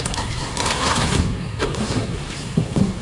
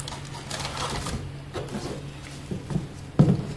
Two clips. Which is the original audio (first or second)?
second